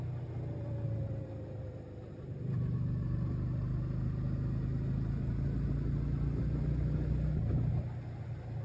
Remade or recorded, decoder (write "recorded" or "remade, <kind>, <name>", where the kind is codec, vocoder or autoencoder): recorded